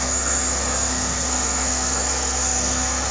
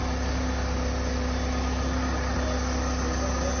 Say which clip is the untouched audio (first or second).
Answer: second